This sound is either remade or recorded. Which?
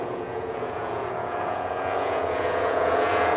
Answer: remade